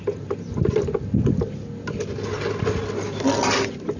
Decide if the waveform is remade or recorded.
recorded